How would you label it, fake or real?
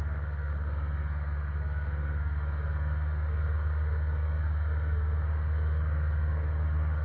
fake